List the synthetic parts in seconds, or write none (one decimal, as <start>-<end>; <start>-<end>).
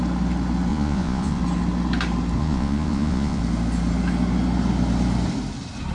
0.7-1.4; 2.4-3.4